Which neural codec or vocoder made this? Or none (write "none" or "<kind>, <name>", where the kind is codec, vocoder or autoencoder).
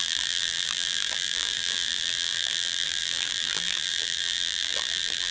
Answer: vocoder, BigVGAN v2